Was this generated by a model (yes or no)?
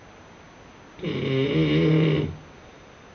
no